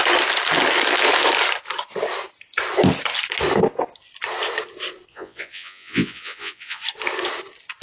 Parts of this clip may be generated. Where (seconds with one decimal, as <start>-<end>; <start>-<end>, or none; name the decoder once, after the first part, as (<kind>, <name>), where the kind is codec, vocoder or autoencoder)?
5.1-6.8 (vocoder, Vocos)